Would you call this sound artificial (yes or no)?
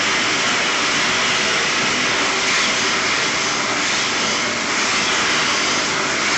no